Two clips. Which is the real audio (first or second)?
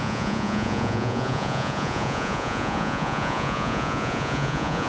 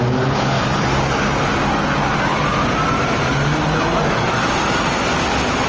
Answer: second